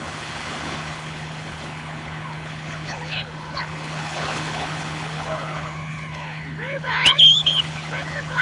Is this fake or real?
fake